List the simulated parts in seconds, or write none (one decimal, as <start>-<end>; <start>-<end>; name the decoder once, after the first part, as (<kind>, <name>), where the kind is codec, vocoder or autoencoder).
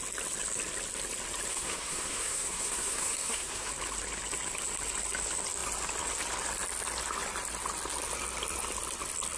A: 1.5-3.7 (codec, SNAC)